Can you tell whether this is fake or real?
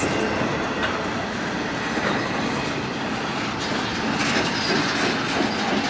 real